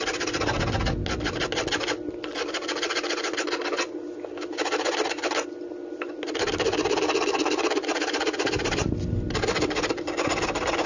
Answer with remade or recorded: recorded